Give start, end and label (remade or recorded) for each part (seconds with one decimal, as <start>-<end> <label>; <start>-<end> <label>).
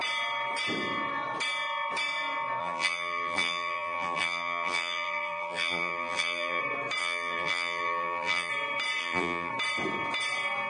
0.0-2.6 recorded; 2.6-6.6 remade; 6.6-7.0 recorded; 7.0-8.5 remade; 8.5-9.0 recorded; 9.0-9.5 remade; 9.5-10.7 recorded